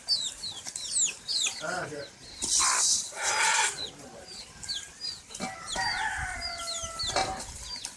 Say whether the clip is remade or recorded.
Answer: recorded